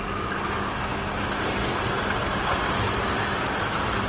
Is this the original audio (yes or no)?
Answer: yes